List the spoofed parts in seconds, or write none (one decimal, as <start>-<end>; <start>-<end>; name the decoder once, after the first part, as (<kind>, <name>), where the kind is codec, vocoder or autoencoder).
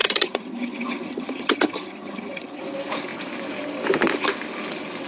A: 0.0-2.6 (vocoder, HiFi-GAN)